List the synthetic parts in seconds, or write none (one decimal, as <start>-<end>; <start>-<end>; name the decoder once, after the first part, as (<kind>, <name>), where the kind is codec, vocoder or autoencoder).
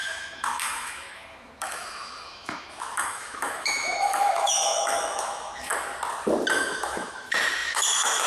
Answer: 0.0-5.7 (autoencoder, DAC-VAE); 6.5-8.3